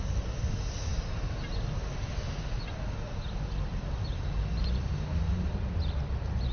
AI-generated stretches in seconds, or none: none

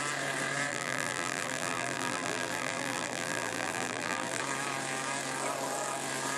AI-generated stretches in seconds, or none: 0.7-4.4

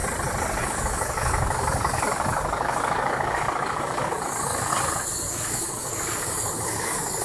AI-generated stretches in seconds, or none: 0.6-4.7; 5.3-7.2

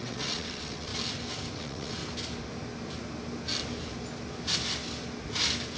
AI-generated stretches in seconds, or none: 0.0-0.9; 1.5-2.0